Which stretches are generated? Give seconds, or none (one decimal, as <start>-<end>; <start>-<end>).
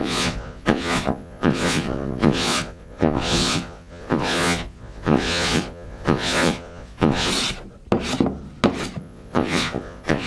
0.0-7.3; 9.0-10.3